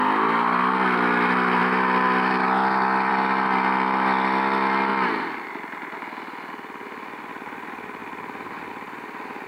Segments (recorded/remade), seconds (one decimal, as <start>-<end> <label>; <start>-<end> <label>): 0.0-9.5 recorded